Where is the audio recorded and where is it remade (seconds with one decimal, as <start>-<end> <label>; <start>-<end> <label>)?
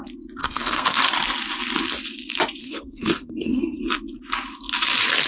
0.0-0.4 recorded; 0.4-1.1 remade; 1.1-2.6 recorded; 2.6-3.8 remade; 3.8-5.3 recorded